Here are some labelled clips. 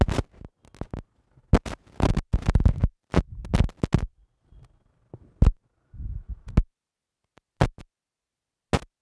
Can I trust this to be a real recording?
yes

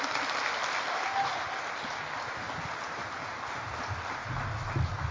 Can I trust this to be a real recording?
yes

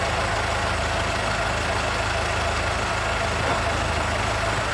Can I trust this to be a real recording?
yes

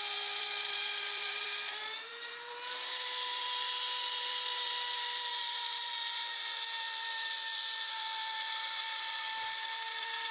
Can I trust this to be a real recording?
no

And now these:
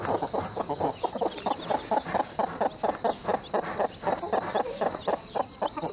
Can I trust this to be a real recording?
yes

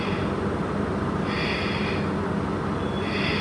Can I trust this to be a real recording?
yes